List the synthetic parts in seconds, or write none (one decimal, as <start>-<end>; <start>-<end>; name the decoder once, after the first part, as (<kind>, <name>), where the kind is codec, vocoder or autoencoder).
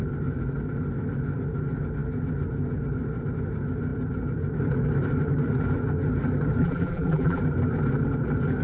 6.6-7.4 (vocoder, BigVGAN v2)